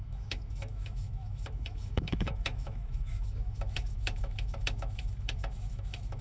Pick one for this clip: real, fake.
fake